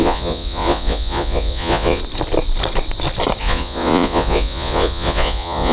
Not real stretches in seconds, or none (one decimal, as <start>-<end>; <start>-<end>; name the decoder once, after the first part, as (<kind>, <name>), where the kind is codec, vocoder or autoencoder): 0.0-2.0 (vocoder, Vocos); 3.4-5.7